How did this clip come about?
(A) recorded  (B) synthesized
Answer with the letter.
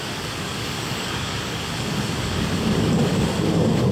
B